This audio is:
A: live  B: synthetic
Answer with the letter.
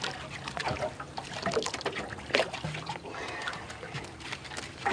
A